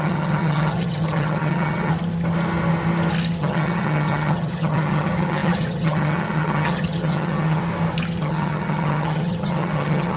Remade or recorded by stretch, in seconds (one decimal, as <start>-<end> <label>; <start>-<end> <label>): 0.0-1.9 remade; 1.9-3.4 recorded; 3.4-7.6 remade; 7.6-8.2 recorded; 8.2-10.2 remade